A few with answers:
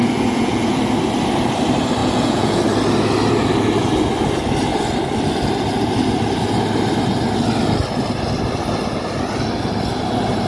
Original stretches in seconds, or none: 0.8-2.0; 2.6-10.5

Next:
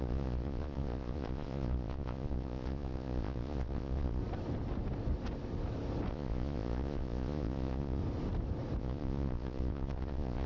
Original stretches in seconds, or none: 4.2-6.1; 8.0-8.8

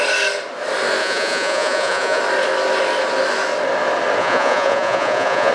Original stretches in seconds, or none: 0.0-1.0; 2.2-4.2